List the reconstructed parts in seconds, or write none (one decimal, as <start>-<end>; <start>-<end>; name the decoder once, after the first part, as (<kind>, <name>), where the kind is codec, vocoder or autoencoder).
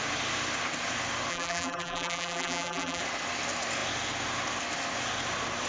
1.3-3.0 (vocoder, BigVGAN v2)